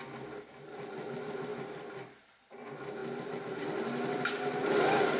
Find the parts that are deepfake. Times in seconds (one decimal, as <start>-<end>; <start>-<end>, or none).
1.5-2.3